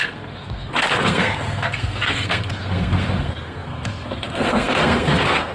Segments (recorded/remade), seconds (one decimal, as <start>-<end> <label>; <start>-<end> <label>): 0.0-5.5 remade